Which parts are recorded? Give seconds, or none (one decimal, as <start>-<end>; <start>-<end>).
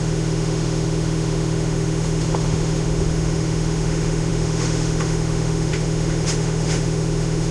none